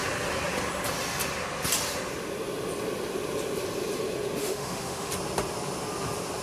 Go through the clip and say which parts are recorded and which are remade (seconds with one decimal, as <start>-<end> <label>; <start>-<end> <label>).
0.0-4.4 recorded; 4.4-5.1 remade; 5.1-6.4 recorded